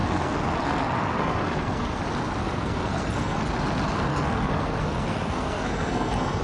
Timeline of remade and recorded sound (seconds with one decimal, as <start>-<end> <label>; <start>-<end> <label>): 0.0-2.0 remade; 2.0-2.4 recorded; 2.4-3.5 remade; 3.5-4.1 recorded; 4.1-6.4 remade